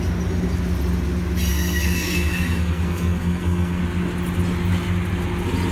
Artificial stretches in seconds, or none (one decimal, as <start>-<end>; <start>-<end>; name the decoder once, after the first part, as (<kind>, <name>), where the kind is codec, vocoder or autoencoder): 1.5-3.8 (codec, SNAC)